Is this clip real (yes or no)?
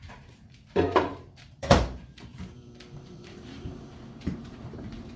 no